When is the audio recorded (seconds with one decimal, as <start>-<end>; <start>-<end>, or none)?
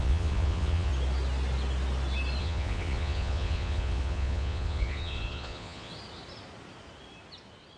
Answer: 0.9-2.4; 5.9-7.8